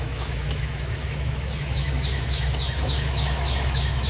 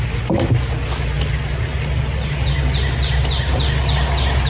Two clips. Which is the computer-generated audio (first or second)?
first